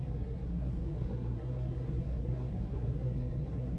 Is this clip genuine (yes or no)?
no